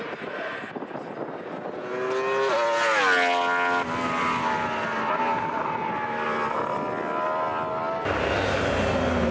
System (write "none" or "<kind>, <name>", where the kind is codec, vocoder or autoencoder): none